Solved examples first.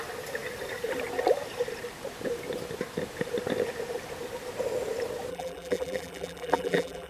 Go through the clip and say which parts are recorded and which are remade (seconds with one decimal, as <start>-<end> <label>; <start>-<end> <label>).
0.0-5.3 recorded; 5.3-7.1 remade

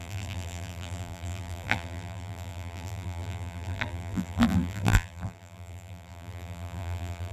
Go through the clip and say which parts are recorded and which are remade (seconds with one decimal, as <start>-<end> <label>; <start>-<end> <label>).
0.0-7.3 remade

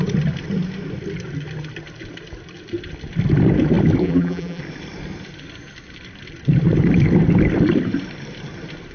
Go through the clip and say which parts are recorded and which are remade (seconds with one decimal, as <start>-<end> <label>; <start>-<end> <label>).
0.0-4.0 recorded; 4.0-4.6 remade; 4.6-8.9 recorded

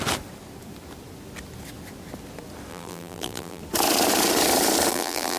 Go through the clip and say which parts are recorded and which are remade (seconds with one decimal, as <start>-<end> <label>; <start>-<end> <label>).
0.0-2.7 recorded; 2.7-3.6 remade; 3.6-4.9 recorded; 4.9-5.4 remade

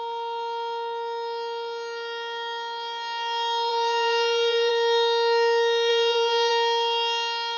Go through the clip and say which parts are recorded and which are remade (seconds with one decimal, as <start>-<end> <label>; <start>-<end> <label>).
0.0-3.7 recorded; 3.7-4.7 remade; 4.7-5.9 recorded; 5.9-6.5 remade; 6.5-7.6 recorded

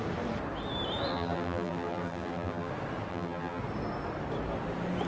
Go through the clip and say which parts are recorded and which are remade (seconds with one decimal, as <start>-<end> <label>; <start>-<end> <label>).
0.0-1.1 recorded; 1.1-2.7 remade; 2.7-3.1 recorded; 3.1-3.6 remade; 3.6-5.1 recorded

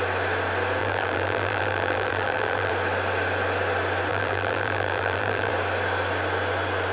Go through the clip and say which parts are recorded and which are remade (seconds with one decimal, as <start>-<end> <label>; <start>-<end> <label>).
0.0-0.8 recorded; 0.8-2.7 remade; 2.7-4.1 recorded; 4.1-5.5 remade; 5.5-6.9 recorded

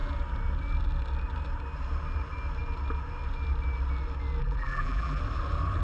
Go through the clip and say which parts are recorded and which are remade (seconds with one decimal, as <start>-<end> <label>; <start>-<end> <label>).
0.0-4.4 recorded; 4.4-5.2 remade; 5.2-5.8 recorded